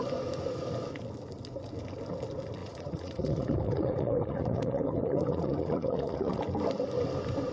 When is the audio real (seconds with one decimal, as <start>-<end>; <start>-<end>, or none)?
0.0-2.6; 6.4-7.5